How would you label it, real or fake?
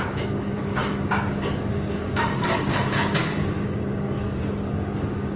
fake